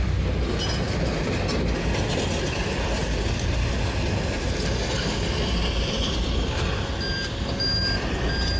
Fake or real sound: real